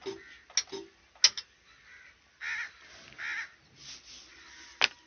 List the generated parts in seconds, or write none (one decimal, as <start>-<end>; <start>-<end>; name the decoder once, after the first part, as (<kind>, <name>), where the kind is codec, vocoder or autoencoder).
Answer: none